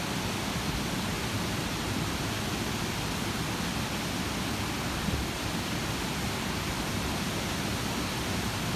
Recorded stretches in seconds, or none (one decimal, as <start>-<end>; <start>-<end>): 0.0-1.6; 2.5-8.8